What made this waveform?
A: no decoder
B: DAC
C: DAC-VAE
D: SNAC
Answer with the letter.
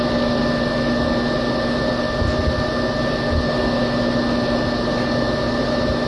A